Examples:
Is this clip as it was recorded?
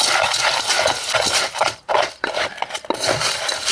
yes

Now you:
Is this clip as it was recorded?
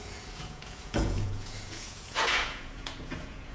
no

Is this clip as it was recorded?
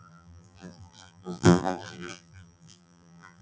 no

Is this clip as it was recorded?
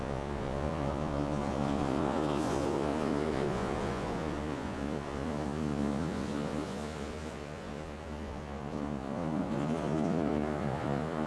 no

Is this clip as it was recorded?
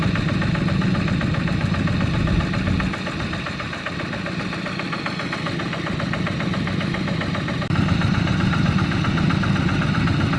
yes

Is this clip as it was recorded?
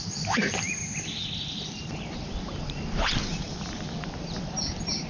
yes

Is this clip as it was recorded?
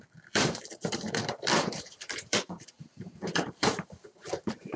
no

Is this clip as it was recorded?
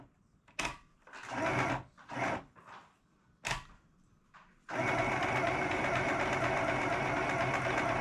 yes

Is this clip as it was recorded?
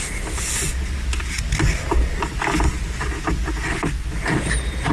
yes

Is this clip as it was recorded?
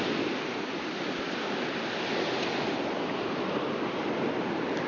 yes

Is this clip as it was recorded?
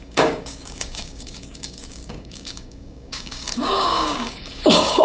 no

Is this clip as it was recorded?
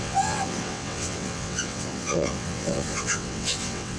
no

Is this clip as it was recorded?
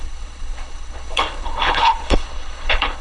no